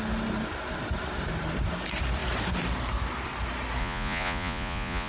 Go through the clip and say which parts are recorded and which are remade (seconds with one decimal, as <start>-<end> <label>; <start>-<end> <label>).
0.0-3.8 recorded; 3.8-5.1 remade